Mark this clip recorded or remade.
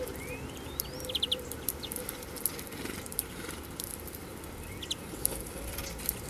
remade